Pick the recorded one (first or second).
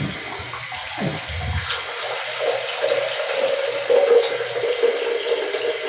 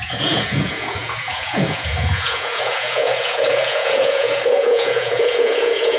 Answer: first